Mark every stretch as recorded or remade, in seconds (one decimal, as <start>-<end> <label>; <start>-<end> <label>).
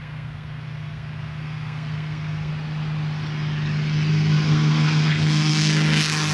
0.0-2.5 remade; 2.5-4.1 recorded; 4.1-6.3 remade